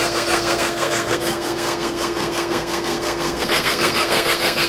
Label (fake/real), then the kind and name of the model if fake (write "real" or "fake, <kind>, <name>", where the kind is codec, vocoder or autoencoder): fake, codec, SNAC